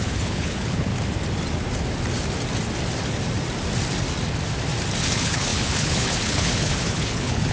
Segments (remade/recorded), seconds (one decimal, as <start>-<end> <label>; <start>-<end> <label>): 0.0-0.9 remade; 0.9-5.1 recorded; 5.1-7.5 remade